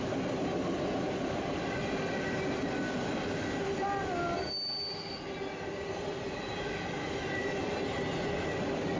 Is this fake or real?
real